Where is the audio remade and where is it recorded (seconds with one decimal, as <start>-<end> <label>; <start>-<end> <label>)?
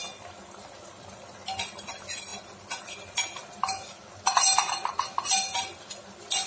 0.0-6.5 recorded